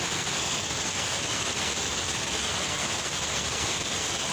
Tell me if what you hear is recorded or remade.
remade